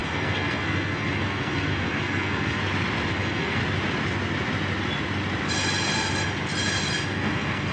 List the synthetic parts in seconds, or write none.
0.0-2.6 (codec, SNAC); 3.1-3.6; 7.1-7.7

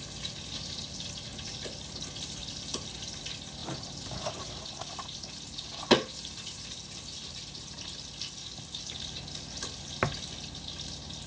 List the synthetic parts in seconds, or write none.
none

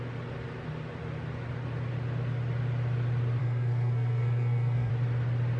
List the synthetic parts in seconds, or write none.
3.4-4.9 (codec, SNAC)

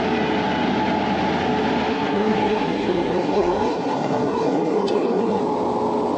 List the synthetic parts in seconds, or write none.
1.9-5.4 (codec, SNAC)

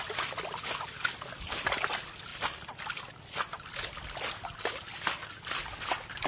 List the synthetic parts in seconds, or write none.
none